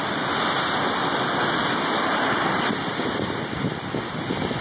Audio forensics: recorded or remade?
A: recorded